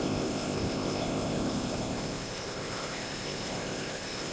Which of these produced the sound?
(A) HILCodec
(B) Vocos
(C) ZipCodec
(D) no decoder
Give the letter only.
C